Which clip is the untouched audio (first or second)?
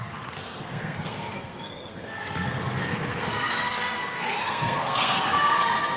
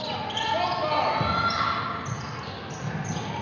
second